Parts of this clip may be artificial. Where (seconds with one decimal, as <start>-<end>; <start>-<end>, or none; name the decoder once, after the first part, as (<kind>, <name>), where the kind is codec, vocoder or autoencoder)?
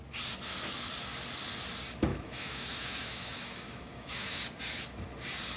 2.1-4.4 (autoencoder, DAC-VAE)